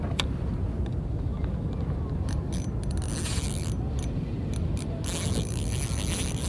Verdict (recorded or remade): recorded